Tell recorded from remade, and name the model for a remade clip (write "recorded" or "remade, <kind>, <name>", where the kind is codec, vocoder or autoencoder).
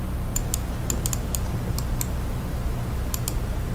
recorded